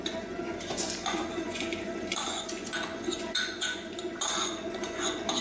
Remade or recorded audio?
remade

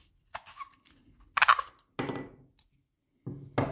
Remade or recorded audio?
recorded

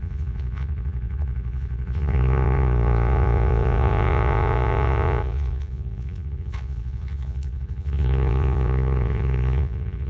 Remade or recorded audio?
remade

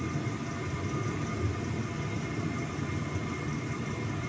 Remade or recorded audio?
recorded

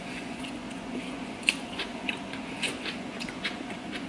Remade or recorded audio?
remade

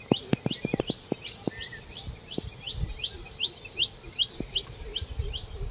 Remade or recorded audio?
recorded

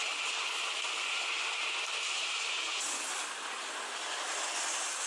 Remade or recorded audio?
recorded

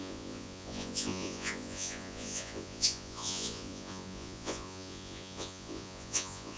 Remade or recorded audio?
remade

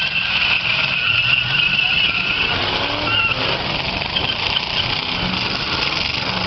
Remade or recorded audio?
recorded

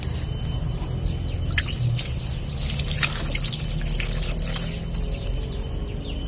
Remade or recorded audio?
recorded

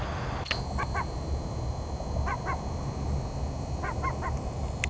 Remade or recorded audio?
recorded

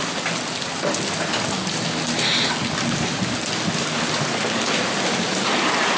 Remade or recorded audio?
recorded